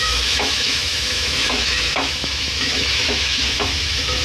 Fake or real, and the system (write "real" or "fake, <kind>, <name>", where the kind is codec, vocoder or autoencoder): fake, autoencoder, DAC-VAE